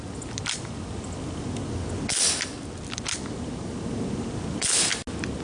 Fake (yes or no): no